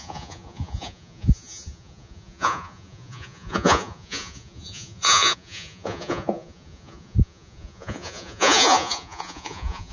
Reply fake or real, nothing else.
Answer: fake